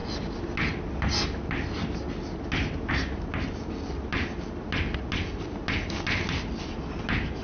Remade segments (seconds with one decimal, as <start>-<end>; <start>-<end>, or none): none